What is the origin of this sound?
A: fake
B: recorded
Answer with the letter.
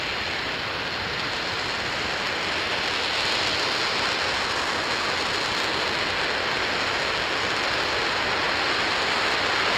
B